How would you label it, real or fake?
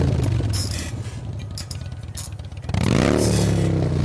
real